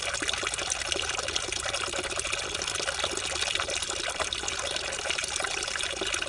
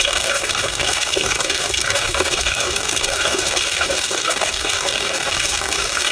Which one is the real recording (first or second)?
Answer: first